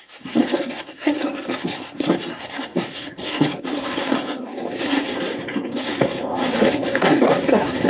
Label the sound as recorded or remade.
remade